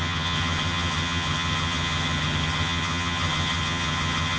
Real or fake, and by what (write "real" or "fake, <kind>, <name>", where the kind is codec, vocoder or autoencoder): fake, vocoder, HiFi-GAN